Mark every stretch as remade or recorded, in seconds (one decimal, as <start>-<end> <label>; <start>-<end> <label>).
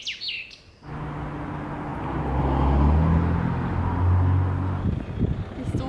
0.0-5.9 recorded